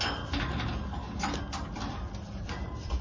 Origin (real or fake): real